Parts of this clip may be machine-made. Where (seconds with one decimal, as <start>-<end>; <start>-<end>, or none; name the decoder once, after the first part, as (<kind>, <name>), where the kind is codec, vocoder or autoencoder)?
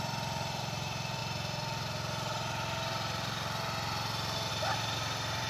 0.0-1.2 (vocoder, BigVGAN v2); 4.5-5.5